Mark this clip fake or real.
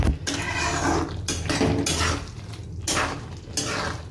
real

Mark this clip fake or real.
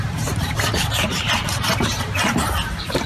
fake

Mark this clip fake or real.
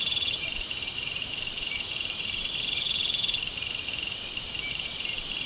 fake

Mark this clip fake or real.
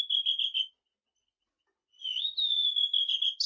real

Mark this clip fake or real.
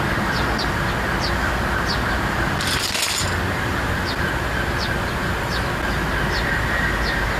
real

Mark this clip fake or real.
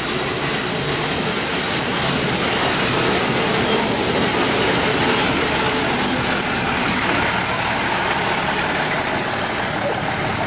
real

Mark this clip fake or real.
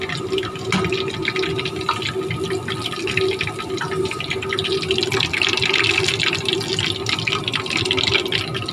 real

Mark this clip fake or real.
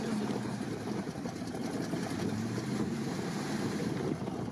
fake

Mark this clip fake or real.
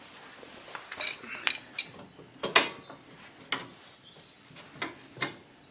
real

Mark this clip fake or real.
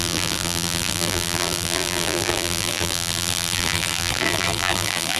fake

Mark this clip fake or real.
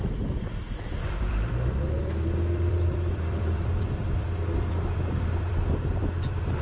fake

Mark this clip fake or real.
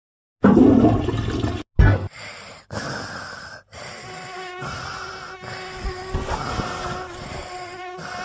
real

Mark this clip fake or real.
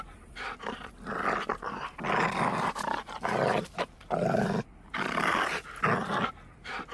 fake